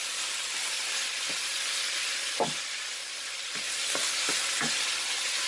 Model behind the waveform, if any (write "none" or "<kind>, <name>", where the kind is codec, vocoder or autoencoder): none